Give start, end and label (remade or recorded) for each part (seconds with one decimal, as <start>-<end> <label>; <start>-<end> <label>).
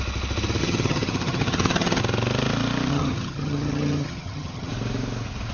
0.0-0.6 recorded; 0.6-2.0 remade; 2.0-2.9 recorded; 2.9-4.7 remade; 4.7-5.5 recorded